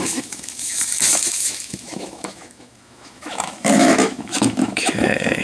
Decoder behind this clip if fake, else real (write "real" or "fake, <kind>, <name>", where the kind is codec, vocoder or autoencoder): fake, autoencoder, DAC-VAE